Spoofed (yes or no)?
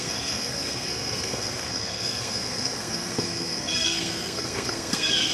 yes